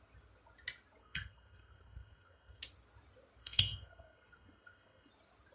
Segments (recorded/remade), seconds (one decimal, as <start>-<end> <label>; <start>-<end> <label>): 0.0-1.0 recorded; 1.0-2.6 remade; 2.6-3.4 recorded; 3.4-5.1 remade; 5.1-5.5 recorded